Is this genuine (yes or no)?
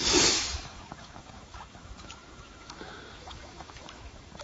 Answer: no